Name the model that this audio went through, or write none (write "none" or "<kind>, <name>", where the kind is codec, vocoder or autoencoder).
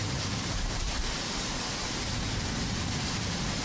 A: none